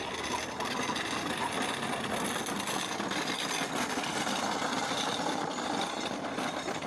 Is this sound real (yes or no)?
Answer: yes